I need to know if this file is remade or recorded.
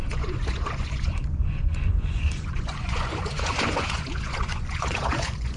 remade